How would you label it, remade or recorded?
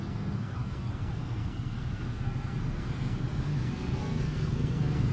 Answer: remade